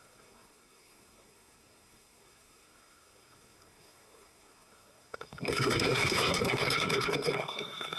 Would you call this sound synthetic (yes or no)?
yes